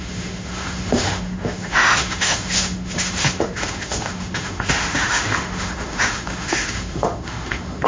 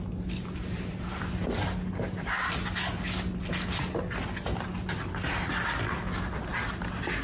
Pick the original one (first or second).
second